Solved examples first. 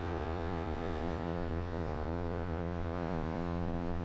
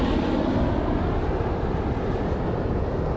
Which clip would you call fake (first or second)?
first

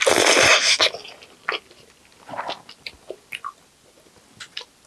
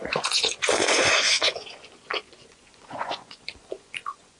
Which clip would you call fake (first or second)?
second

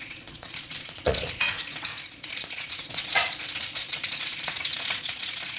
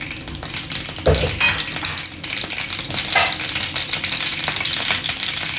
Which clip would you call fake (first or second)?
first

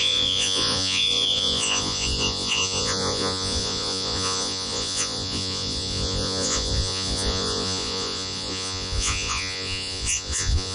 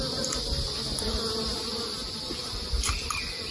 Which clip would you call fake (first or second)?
first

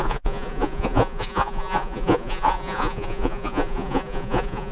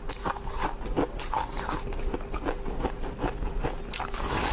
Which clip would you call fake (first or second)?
first